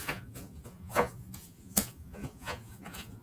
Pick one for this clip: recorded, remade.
remade